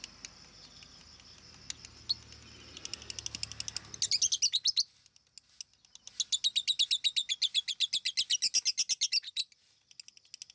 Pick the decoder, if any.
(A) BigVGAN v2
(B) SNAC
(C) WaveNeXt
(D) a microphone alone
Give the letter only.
D